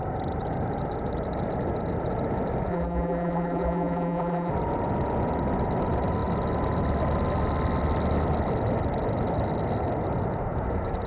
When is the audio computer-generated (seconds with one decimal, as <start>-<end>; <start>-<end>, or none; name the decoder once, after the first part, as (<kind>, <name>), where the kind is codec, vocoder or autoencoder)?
2.7-4.5 (vocoder, BigVGAN v2)